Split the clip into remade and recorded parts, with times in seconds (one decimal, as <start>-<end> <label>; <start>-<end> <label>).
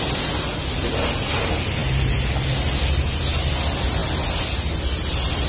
0.0-5.5 recorded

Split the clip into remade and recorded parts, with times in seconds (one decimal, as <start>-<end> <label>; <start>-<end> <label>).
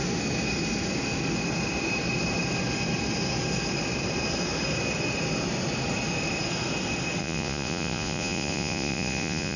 0.0-7.2 recorded; 7.2-9.6 remade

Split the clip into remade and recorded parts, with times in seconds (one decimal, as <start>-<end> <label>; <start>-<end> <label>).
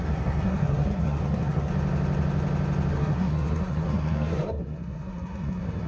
0.0-1.7 remade; 1.7-2.9 recorded; 2.9-5.9 remade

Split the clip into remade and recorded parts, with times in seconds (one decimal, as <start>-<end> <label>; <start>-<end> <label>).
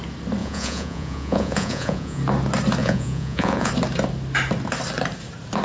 0.0-0.4 recorded; 0.4-2.2 remade; 2.2-2.8 recorded; 2.8-3.7 remade; 3.7-5.6 recorded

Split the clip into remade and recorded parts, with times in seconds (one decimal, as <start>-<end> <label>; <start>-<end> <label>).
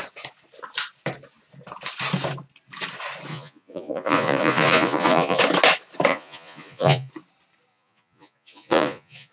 0.0-3.3 recorded; 3.3-5.4 remade; 5.4-6.1 recorded; 6.1-7.1 remade; 7.1-7.7 recorded; 7.7-9.3 remade